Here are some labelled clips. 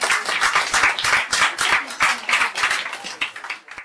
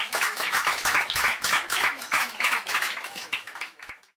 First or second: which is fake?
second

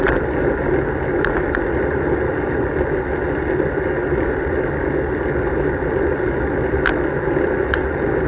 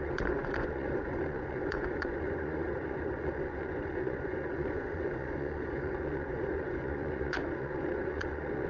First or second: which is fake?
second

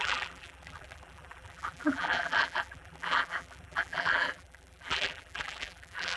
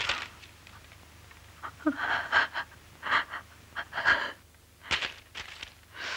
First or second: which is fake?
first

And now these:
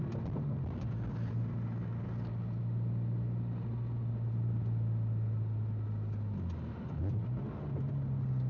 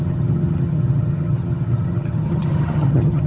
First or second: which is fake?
second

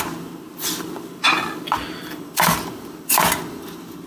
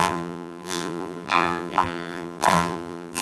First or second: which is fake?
second